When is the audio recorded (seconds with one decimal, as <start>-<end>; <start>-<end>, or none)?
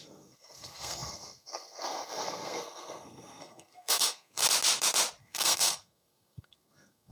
4.4-5.2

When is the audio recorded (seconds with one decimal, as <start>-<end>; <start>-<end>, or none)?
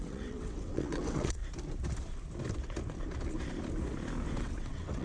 1.4-4.4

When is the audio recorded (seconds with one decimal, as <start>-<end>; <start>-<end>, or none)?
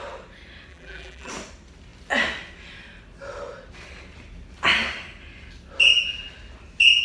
0.0-0.7; 1.3-7.0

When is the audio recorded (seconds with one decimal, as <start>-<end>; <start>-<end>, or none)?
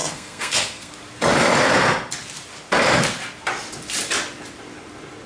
0.9-5.3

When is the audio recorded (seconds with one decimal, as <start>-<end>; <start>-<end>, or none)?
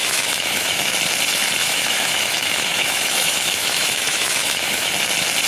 0.9-1.6; 4.9-5.5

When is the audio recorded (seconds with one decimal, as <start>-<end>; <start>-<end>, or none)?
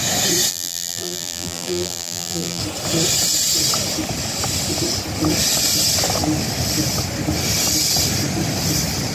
0.0-0.5; 2.6-9.1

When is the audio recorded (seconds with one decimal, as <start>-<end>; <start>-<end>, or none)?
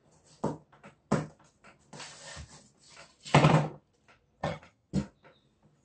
0.0-4.4; 4.9-5.8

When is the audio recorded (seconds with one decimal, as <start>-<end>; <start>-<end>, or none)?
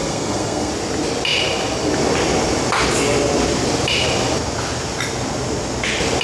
0.7-6.2